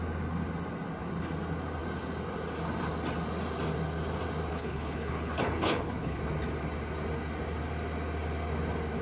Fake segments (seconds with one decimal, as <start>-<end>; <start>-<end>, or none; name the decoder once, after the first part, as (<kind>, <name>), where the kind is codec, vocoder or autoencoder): 4.5-6.2 (codec, HILCodec)